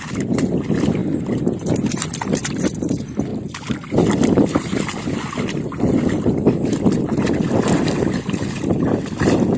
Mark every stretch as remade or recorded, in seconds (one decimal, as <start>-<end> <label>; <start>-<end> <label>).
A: 0.0-9.6 recorded